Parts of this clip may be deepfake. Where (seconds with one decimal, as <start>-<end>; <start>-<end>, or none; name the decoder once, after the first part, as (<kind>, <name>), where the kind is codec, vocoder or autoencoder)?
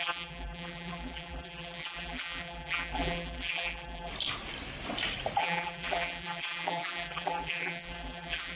0.0-4.1 (vocoder, BigVGAN v2); 5.4-8.6